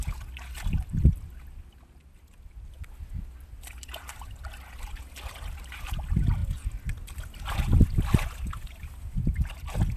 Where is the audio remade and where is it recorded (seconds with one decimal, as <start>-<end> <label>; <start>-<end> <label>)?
0.0-10.0 recorded